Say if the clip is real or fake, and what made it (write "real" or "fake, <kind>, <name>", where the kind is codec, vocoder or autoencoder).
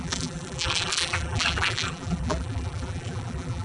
fake, vocoder, BigVGAN v2